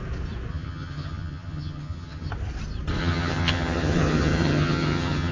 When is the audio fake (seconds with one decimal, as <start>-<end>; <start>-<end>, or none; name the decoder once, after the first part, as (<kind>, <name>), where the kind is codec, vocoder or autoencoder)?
0.5-2.3 (vocoder, HiFi-GAN); 3.0-5.3